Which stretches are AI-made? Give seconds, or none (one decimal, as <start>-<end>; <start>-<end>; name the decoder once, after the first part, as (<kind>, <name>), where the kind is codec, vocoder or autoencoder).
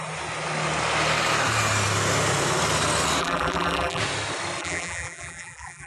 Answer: 3.2-4.0 (vocoder, BigVGAN v2); 4.6-5.9